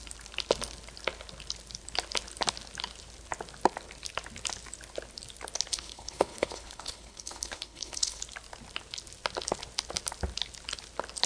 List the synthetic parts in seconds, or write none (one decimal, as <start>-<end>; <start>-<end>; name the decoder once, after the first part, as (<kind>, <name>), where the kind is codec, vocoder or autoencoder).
5.7-8.2 (codec, HILCodec)

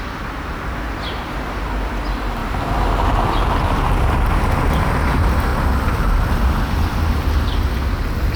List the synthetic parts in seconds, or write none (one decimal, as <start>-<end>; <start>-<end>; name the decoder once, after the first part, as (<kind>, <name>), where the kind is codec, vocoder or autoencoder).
2.4-3.8 (vocoder, BigVGAN v2); 5.5-6.9

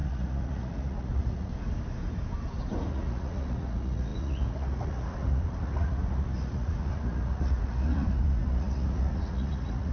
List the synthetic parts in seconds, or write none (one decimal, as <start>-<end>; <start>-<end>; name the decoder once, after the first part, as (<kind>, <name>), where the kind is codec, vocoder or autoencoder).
0.0-1.5 (vocoder, Vocos); 2.9-9.9

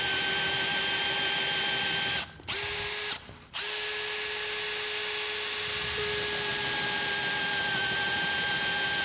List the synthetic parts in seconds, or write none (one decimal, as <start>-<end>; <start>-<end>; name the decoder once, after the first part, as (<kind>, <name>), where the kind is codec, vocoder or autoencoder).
none

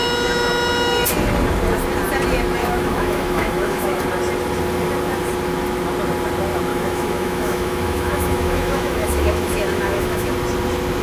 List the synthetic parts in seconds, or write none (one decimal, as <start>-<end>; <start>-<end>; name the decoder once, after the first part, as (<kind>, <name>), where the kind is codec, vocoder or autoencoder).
2.6-4.0 (autoencoder, DAC-VAE); 6.7-10.3

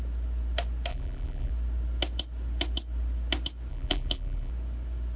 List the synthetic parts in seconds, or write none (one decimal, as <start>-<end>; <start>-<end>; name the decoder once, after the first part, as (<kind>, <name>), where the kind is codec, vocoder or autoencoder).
0.9-1.5 (vocoder, BigVGAN v2); 3.7-4.5

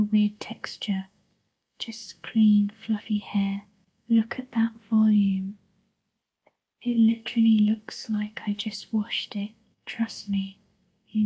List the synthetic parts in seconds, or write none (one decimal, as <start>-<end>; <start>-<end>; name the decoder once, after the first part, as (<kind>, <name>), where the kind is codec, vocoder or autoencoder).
0.0-4.2 (codec, SNAC); 7.1-11.3